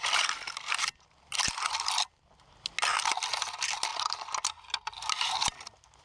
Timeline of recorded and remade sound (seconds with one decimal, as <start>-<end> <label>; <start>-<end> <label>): 0.0-6.0 recorded